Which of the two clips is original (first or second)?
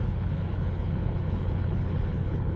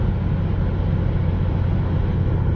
second